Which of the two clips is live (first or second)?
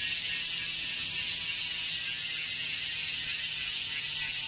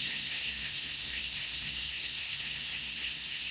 first